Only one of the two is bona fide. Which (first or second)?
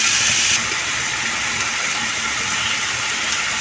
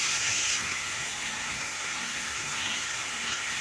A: first